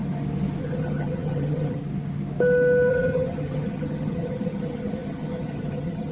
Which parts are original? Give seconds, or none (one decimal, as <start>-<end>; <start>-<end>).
0.0-0.6; 1.8-2.9